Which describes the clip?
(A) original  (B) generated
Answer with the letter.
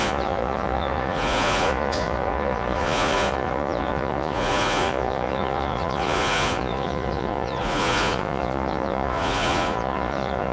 B